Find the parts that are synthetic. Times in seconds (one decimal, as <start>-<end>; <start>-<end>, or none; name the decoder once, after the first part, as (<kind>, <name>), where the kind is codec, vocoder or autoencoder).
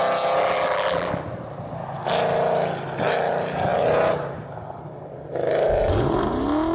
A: 0.4-1.2 (vocoder, BigVGAN v2)